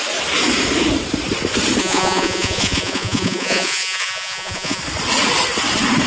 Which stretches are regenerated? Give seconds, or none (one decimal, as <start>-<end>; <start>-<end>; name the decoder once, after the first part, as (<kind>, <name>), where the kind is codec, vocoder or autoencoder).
1.8-4.8 (vocoder, Vocos)